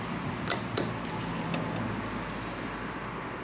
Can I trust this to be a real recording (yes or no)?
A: yes